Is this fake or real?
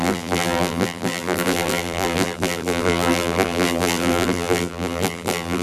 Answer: fake